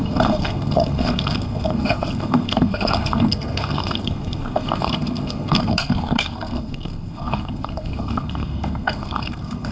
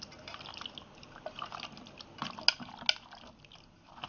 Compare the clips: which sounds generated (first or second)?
first